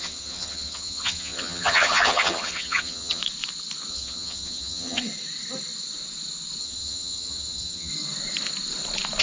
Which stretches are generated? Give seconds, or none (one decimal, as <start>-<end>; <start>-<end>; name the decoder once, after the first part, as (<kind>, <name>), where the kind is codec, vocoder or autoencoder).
0.0-3.2 (vocoder, HiFi-GAN); 3.9-5.0; 6.6-7.9